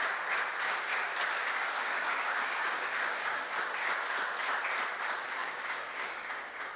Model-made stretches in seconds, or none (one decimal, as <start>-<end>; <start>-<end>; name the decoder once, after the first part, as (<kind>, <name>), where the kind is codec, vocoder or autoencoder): 1.4-3.5 (codec, DAC); 5.4-6.8